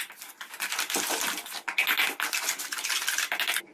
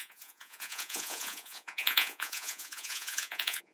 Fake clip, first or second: second